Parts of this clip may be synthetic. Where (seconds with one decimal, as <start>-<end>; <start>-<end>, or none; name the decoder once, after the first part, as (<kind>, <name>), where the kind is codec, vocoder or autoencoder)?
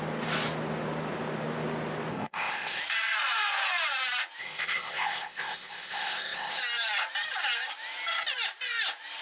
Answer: 2.1-2.8 (codec, ZipCodec); 4.4-6.6